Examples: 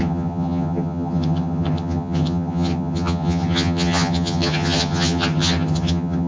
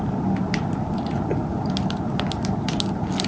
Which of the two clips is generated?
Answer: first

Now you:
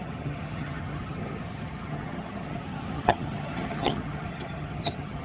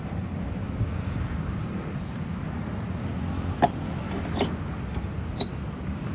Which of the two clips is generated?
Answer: first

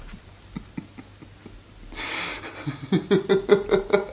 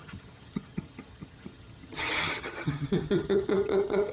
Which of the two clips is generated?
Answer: second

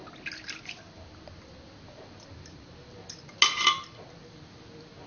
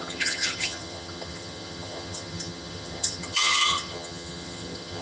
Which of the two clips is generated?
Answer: second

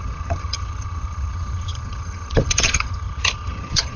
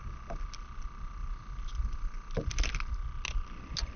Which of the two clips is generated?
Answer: first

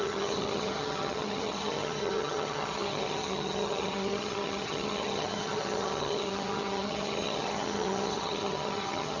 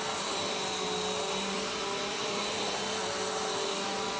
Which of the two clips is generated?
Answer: first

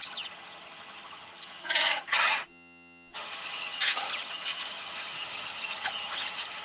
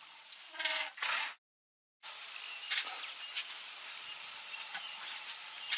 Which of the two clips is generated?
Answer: first